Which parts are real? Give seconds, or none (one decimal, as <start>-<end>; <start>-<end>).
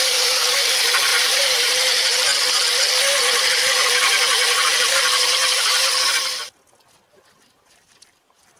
2.3-3.5; 5.8-7.4